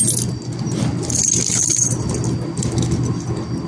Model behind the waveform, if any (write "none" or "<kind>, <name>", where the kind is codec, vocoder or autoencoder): vocoder, BigVGAN v2